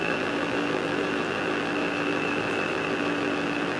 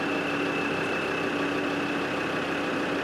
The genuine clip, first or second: second